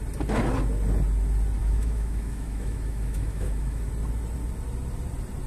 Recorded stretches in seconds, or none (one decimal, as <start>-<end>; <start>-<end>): 0.0-1.6; 3.9-5.5